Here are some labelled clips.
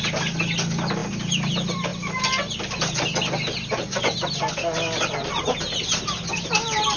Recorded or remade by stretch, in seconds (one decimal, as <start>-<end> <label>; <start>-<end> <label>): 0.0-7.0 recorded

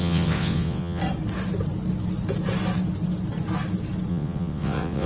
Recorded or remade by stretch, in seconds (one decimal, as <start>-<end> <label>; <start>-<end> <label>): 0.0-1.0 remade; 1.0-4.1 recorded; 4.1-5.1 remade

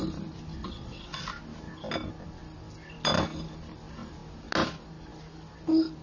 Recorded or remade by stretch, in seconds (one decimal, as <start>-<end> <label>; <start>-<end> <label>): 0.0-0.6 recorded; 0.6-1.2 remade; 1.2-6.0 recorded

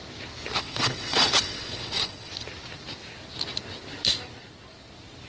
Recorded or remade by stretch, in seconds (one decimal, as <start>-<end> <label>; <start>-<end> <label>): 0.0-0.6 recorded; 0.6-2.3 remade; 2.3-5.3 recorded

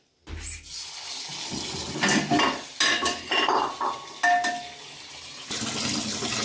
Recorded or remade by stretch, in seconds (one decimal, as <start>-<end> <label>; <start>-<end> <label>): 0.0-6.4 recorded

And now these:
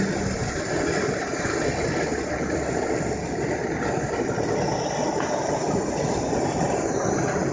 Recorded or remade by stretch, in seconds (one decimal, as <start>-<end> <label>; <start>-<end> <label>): 0.0-7.5 recorded

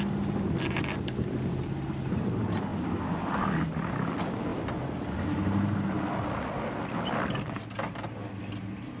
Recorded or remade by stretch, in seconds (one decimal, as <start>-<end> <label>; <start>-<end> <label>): 0.0-9.0 recorded